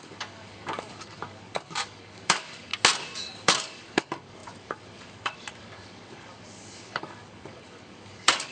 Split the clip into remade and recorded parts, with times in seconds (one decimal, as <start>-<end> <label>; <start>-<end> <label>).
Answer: 0.0-2.7 remade; 2.7-3.3 recorded; 3.3-8.5 remade